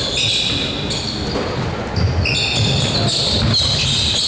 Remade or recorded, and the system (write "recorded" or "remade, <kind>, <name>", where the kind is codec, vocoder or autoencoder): recorded